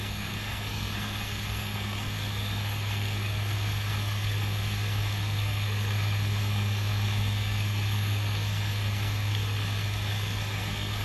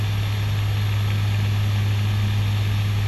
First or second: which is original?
second